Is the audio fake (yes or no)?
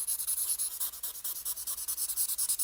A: no